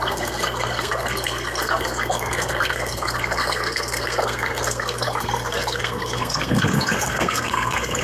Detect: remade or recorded remade